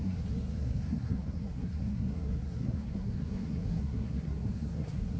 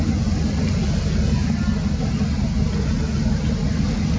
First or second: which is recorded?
second